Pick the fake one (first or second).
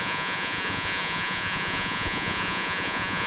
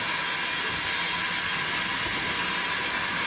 first